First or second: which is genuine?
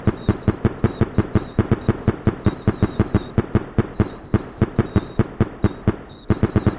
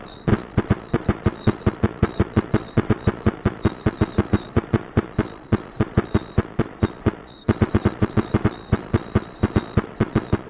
first